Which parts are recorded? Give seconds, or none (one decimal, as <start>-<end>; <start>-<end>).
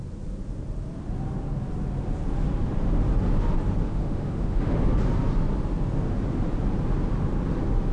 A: 0.0-3.8; 4.9-7.9